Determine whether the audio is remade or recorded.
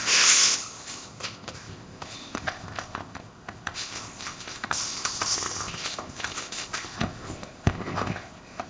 remade